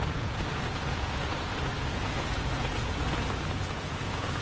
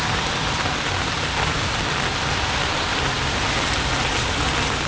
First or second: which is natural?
second